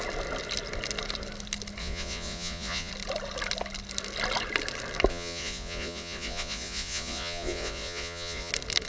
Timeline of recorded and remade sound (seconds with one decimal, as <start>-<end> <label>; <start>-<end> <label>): 0.0-1.8 recorded; 1.8-2.9 remade; 2.9-5.1 recorded; 5.1-8.5 remade; 8.5-8.9 recorded